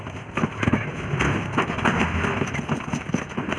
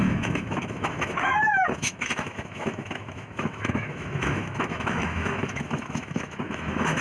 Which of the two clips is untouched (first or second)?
first